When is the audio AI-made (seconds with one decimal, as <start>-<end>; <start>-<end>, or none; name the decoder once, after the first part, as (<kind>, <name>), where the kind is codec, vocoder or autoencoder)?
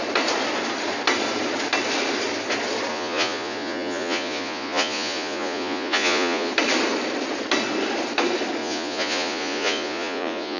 2.9-6.5 (vocoder, Vocos); 8.6-10.6